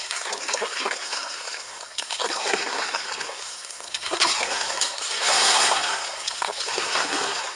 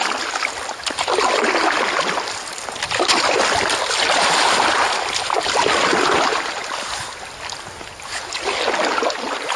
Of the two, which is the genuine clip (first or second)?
second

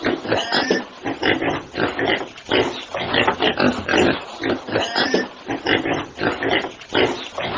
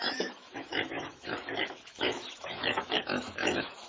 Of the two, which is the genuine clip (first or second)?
first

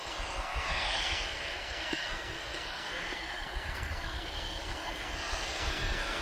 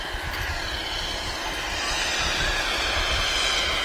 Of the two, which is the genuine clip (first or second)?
second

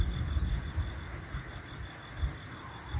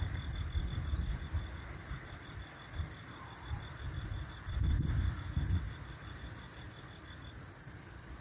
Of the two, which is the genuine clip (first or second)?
first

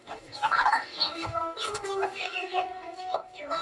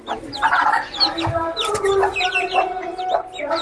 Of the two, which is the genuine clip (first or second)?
second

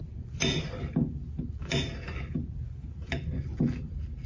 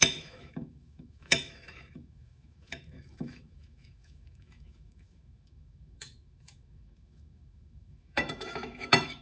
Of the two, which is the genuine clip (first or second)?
first